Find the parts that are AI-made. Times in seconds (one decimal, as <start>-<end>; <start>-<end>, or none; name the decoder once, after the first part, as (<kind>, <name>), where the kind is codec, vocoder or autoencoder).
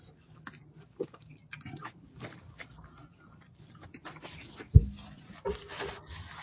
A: none